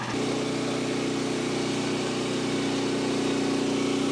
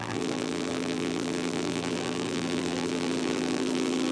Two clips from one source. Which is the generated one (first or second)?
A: second